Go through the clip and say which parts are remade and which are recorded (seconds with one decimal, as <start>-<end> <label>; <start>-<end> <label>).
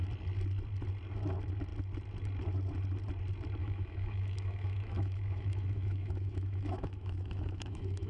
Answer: 0.0-3.6 recorded; 3.6-8.1 remade